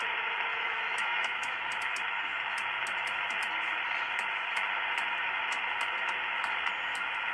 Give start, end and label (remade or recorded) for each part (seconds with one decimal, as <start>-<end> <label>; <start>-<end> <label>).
0.0-0.5 recorded; 0.5-1.6 remade; 1.6-7.3 recorded